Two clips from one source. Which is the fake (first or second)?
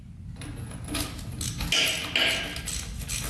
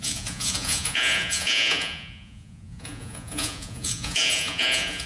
second